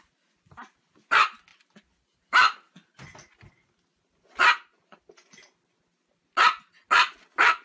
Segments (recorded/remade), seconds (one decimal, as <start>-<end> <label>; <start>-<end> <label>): 0.0-7.6 recorded